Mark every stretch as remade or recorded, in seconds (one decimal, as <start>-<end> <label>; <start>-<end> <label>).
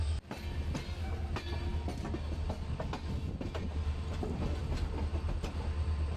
0.0-6.2 recorded